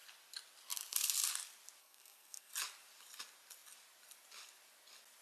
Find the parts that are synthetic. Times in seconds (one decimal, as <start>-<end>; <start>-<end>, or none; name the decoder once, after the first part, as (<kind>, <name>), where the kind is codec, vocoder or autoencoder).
1.8-2.5 (codec, SNAC)